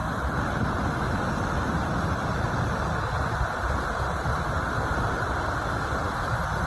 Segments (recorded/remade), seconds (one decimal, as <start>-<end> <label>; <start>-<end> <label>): 0.0-6.7 remade